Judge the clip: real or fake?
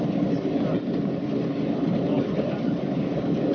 real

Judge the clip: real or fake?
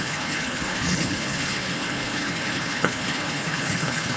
fake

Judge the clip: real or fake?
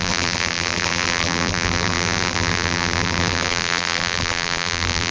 fake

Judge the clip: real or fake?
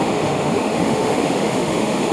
fake